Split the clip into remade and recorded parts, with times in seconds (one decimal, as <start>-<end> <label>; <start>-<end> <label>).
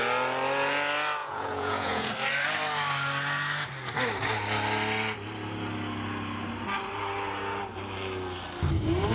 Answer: 0.0-1.2 recorded; 1.2-2.1 remade; 2.1-9.1 recorded